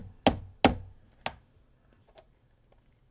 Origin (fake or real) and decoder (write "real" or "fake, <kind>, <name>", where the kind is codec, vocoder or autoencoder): real